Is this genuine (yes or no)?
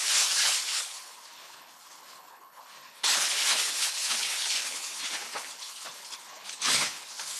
no